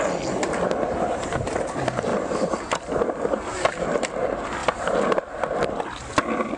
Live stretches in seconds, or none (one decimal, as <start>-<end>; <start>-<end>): 0.0-6.6